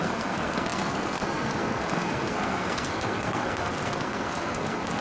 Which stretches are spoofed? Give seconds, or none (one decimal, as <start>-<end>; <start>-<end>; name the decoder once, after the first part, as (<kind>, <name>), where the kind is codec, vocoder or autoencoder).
0.0-5.0 (codec, SNAC)